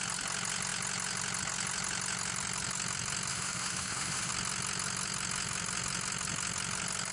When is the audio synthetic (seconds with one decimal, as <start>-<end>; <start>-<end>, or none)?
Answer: 3.3-4.3